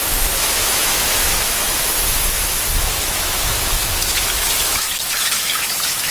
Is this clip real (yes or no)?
no